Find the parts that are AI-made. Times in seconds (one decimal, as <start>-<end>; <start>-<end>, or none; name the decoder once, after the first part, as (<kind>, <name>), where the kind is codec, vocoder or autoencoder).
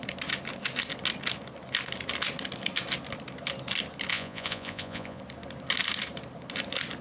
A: 4.1-5.2 (vocoder, Vocos)